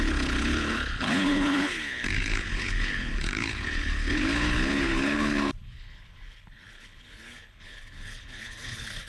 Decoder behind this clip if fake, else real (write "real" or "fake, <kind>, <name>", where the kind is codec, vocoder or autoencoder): fake, codec, HILCodec